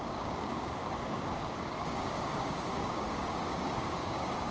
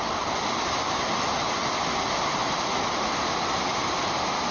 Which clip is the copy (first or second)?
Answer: first